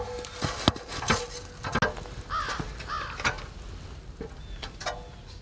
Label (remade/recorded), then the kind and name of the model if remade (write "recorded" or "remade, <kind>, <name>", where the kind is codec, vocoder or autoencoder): recorded